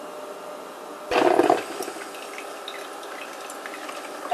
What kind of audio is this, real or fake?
real